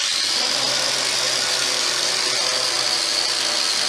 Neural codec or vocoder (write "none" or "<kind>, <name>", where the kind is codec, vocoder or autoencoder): none